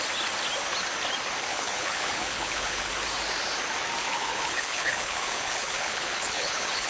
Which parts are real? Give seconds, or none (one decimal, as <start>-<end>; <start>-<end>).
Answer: 0.0-1.5; 2.9-4.0